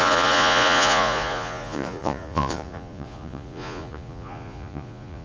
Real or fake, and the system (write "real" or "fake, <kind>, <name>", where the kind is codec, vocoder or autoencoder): fake, vocoder, Vocos